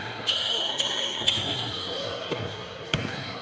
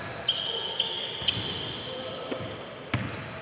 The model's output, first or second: first